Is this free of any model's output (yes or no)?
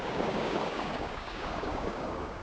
no